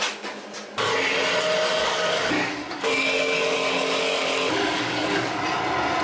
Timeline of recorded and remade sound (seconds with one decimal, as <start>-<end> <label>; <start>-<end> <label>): 0.0-1.8 recorded; 1.8-5.4 remade; 5.4-6.0 recorded